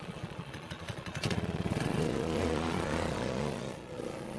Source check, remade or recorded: remade